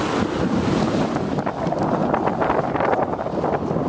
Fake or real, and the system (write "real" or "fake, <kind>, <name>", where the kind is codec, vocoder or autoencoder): real